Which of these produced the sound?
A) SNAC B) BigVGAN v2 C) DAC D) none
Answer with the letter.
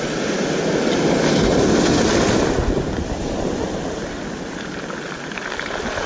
D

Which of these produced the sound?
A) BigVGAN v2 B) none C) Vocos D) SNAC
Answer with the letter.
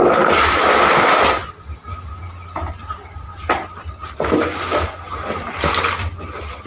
B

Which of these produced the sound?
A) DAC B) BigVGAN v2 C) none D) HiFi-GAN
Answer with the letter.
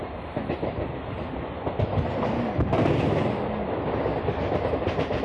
C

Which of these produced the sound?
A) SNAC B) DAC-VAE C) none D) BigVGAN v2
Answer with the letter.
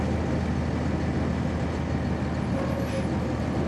C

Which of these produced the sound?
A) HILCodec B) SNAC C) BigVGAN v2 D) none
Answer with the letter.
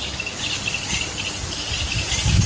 D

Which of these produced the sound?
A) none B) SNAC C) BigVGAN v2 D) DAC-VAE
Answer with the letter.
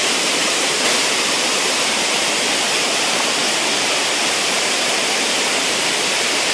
C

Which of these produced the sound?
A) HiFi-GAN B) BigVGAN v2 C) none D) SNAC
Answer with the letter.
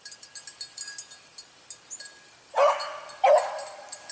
C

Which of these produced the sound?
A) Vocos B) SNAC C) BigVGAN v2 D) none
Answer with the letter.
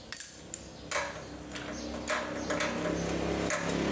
D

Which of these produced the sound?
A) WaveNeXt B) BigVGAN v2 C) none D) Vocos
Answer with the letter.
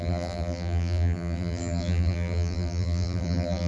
B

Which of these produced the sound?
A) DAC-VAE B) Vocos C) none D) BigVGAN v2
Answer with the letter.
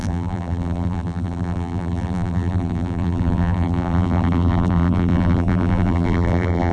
D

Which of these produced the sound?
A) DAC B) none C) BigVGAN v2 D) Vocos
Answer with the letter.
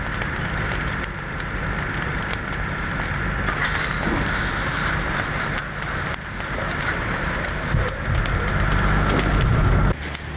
B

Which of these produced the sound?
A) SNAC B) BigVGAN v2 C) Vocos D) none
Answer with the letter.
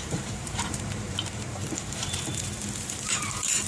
B